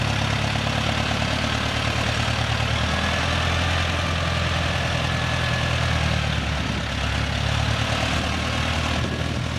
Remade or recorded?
recorded